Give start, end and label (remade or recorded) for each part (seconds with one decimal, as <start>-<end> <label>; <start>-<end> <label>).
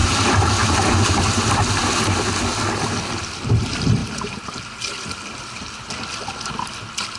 0.0-1.4 remade; 1.4-4.0 recorded; 4.0-5.9 remade; 5.9-7.2 recorded